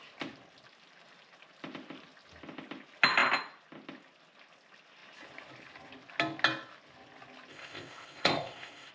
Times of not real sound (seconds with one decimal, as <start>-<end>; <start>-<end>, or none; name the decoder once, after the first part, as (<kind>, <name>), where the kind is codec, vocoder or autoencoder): 7.5-8.9 (codec, ZipCodec)